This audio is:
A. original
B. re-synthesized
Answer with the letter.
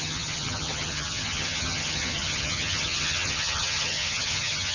B